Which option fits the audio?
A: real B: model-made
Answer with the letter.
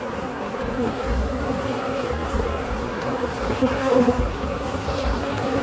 B